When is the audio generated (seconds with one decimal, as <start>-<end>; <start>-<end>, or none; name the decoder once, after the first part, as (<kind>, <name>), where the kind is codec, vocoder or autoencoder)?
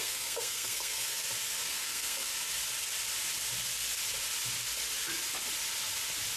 0.0-1.2 (codec, SNAC); 1.7-2.3